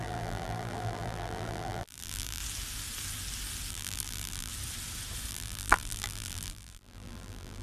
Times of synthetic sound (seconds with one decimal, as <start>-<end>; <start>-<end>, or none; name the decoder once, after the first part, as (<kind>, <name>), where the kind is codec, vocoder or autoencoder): 0.0-2.4 (vocoder, BigVGAN v2); 3.7-4.5; 5.3-7.6